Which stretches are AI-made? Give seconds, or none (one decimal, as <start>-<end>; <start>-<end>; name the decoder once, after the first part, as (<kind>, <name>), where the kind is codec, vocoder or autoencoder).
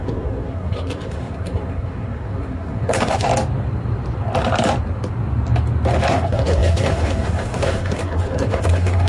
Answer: 0.0-3.3 (codec, SNAC); 6.1-9.1